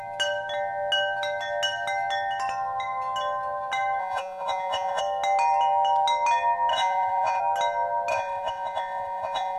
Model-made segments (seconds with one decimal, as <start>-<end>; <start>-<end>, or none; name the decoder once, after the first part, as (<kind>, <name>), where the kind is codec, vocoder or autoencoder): 4.0-5.0 (vocoder, Vocos); 6.7-7.4; 8.1-9.6